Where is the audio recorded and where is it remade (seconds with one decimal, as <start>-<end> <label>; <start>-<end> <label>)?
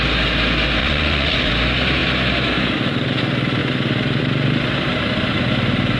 0.0-0.8 recorded; 0.8-1.5 remade; 1.5-6.0 recorded